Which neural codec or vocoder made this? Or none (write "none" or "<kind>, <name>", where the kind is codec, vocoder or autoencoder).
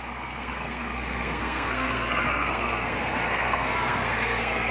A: codec, SNAC